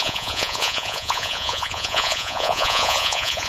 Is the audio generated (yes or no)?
yes